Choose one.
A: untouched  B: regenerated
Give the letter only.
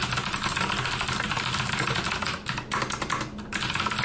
A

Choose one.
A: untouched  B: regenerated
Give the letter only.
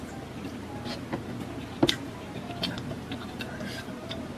A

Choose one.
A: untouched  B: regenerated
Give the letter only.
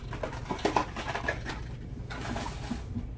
A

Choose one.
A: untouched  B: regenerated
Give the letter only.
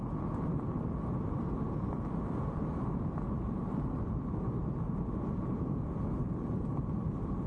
A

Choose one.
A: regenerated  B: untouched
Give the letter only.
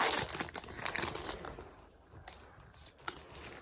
B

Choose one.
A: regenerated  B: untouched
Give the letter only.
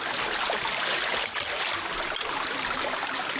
B